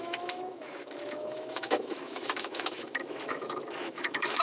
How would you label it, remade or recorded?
remade